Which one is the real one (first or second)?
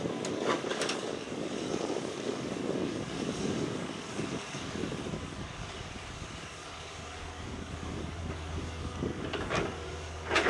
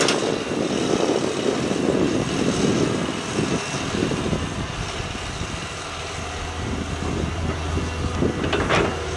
second